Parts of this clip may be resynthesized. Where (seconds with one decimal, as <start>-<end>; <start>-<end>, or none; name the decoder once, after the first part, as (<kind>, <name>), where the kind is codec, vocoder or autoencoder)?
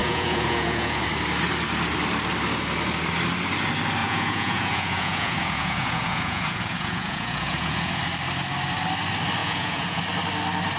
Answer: 0.0-1.0 (vocoder, Vocos); 4.0-8.0; 9.4-10.0